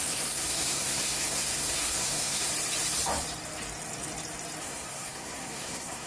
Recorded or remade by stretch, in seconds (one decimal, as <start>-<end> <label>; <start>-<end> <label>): 0.0-2.5 remade; 2.5-4.6 recorded; 4.6-6.1 remade